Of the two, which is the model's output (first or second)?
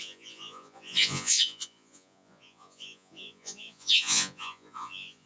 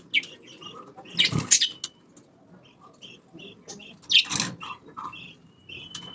first